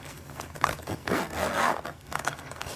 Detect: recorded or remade remade